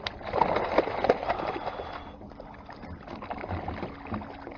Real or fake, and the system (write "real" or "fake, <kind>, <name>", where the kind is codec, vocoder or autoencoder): real